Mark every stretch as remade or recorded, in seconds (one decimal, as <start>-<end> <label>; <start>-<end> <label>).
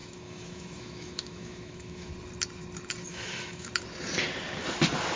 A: 0.0-2.1 remade; 2.1-3.1 recorded; 3.1-3.7 remade; 3.7-5.2 recorded